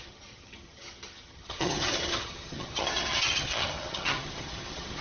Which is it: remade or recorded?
remade